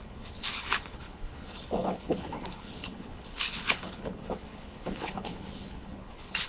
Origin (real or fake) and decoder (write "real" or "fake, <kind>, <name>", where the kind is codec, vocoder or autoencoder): fake, codec, HILCodec